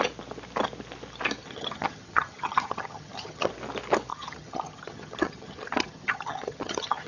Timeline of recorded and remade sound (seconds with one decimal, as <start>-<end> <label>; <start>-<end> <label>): 0.0-1.4 recorded; 1.4-3.5 remade; 3.5-4.1 recorded; 4.1-7.1 remade